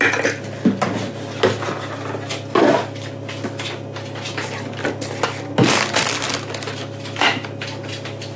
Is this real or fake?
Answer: real